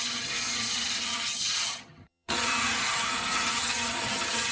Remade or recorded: remade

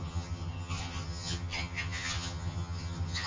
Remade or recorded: remade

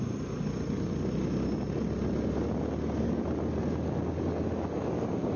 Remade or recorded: recorded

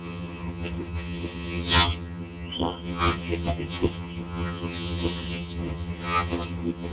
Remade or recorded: remade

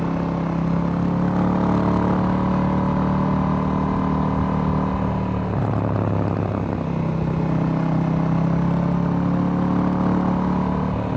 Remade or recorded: recorded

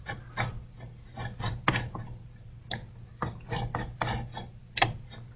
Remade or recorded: recorded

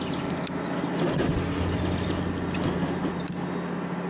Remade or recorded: recorded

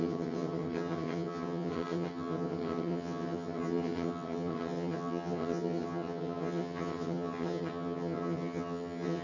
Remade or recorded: remade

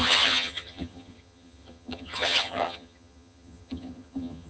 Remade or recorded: remade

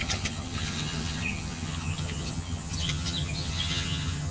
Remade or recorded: remade